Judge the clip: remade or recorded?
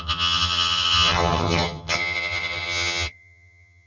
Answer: remade